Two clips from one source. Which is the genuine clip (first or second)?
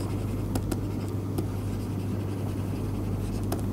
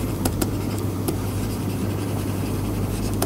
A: first